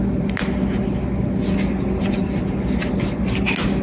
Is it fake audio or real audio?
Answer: real